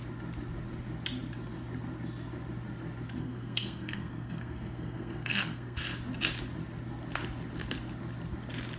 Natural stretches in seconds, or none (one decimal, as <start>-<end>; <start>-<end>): 0.0-3.2; 5.8-8.8